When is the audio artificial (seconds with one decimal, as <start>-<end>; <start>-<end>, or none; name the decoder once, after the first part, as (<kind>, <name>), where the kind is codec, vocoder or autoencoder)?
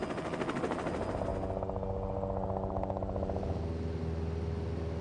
none